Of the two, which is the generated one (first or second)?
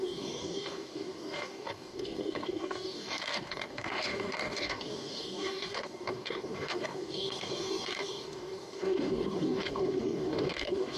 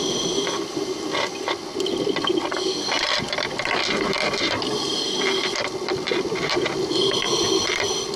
first